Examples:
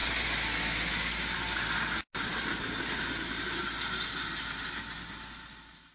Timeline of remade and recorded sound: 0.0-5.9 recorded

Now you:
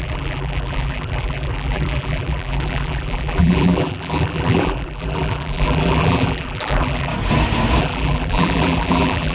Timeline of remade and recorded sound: 0.0-7.1 remade; 7.1-7.8 recorded; 7.8-9.3 remade

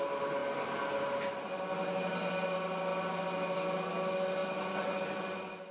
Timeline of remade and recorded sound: 0.0-5.7 recorded

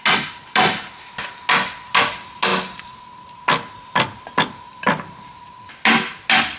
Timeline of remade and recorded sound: 0.0-6.6 recorded

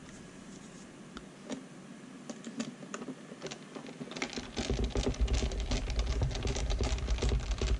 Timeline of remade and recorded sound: 0.0-7.8 recorded

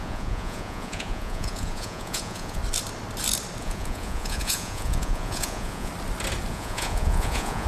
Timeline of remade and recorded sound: 0.0-2.6 remade; 2.6-3.6 recorded; 3.6-5.9 remade; 5.9-6.5 recorded; 6.5-7.7 remade